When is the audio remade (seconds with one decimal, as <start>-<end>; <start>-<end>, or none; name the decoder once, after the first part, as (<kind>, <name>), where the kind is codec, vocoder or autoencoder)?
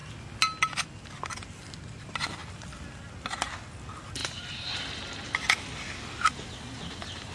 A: none